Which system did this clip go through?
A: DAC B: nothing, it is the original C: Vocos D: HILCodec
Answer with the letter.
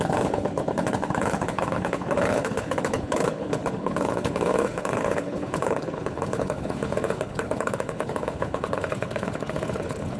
D